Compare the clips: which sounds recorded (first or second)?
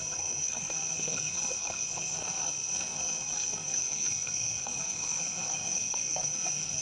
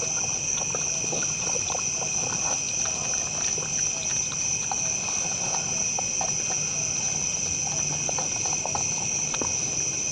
second